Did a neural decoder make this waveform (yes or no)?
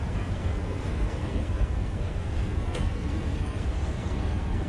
yes